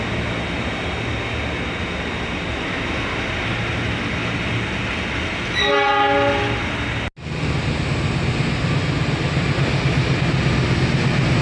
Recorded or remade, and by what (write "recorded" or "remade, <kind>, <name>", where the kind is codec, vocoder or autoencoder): recorded